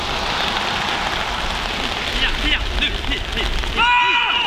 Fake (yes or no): no